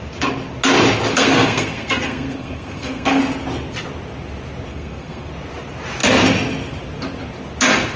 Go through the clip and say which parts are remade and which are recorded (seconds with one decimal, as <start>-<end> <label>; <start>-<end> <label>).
0.0-1.1 recorded; 1.1-3.2 remade; 3.2-4.7 recorded; 4.7-5.3 remade; 5.3-8.0 recorded